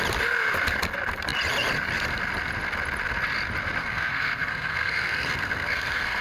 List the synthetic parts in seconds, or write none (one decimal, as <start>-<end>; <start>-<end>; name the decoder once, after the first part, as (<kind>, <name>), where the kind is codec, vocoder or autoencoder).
3.8-6.2 (codec, SNAC)